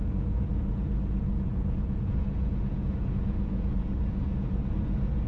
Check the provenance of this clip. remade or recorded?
remade